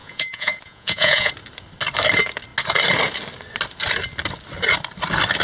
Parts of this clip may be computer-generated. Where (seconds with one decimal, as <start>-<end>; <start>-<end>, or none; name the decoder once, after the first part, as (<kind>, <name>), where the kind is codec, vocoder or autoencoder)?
0.0-1.3 (vocoder, Vocos)